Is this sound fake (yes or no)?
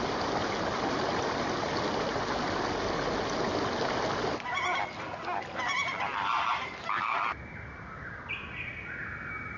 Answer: no